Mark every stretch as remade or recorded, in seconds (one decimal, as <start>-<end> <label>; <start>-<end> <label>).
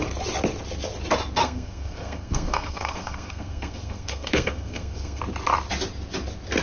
0.0-1.4 recorded; 1.4-5.2 remade; 5.2-6.6 recorded